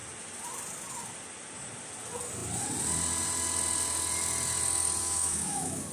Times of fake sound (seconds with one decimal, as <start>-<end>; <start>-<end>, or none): 5.0-5.9